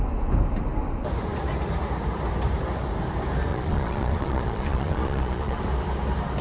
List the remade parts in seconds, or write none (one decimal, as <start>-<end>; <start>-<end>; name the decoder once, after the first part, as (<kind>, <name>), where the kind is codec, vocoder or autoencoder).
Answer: 3.5-5.6 (vocoder, Vocos)